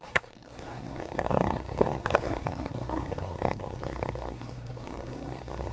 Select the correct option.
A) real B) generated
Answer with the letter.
B